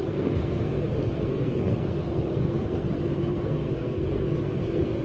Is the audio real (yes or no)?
no